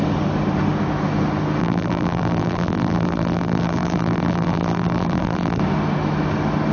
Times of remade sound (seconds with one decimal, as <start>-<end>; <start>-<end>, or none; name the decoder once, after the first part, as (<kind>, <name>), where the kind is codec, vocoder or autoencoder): 1.6-5.6 (vocoder, BigVGAN v2)